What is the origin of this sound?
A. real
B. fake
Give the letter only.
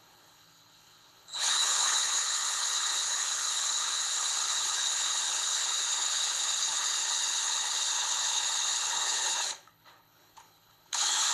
B